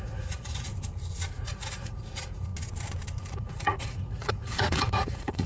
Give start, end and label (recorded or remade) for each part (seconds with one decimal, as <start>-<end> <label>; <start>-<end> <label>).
0.0-0.7 remade; 0.7-1.3 recorded; 1.3-2.5 remade; 2.5-3.2 recorded; 3.2-5.5 remade